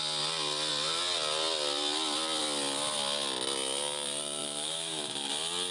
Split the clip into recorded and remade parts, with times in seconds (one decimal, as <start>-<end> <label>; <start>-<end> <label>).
0.0-4.4 recorded; 4.4-5.3 remade; 5.3-5.7 recorded

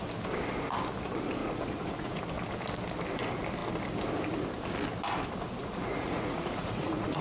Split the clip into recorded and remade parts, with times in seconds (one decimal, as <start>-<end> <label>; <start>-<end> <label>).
0.0-1.4 recorded; 1.4-2.2 remade; 2.2-5.6 recorded; 5.6-7.2 remade